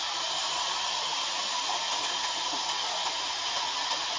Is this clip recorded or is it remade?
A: recorded